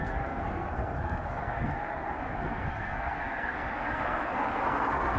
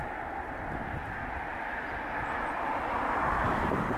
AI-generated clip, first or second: first